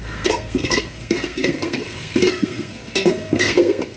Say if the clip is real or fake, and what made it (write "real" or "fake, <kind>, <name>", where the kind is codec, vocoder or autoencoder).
fake, codec, SNAC